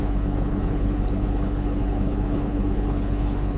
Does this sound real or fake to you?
fake